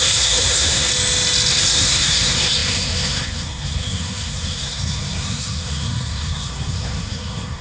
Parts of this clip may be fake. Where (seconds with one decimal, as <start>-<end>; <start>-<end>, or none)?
0.0-0.9; 1.5-7.6